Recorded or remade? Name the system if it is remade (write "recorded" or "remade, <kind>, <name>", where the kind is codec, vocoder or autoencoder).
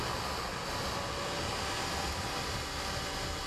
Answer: recorded